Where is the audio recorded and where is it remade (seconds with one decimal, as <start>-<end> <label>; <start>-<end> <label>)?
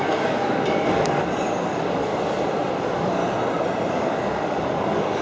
0.0-2.1 remade; 2.1-2.7 recorded; 2.7-3.2 remade; 3.2-3.9 recorded; 3.9-5.2 remade